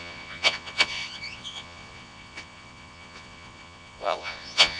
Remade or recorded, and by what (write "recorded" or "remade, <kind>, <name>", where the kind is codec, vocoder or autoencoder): remade, vocoder, Vocos